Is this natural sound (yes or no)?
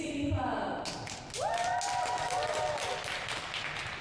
yes